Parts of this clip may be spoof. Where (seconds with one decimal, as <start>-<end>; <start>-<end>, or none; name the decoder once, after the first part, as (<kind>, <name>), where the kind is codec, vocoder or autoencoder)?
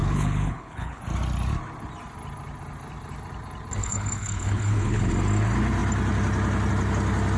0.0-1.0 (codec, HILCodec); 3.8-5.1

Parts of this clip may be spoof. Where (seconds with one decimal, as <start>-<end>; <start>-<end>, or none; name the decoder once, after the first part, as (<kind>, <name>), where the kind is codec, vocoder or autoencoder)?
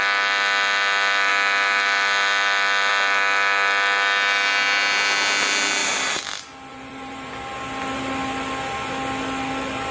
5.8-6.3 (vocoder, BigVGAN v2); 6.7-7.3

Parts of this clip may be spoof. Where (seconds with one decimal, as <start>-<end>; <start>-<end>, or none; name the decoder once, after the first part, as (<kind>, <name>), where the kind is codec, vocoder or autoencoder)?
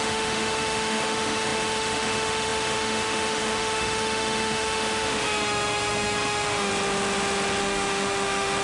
0.0-6.7 (autoencoder, DAC-VAE); 7.6-8.6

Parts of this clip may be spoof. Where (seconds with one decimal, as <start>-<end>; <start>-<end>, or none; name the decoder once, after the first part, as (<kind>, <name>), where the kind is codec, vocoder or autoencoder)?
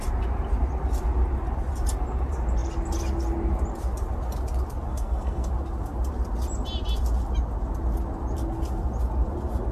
4.9-5.5 (codec, SNAC)